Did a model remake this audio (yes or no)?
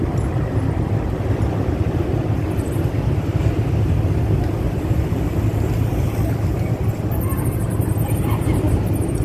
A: no